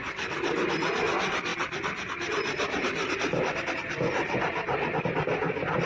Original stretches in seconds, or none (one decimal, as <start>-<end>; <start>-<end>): 0.0-5.9